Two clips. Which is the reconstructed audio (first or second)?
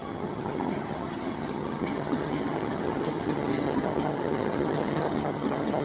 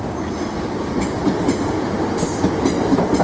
first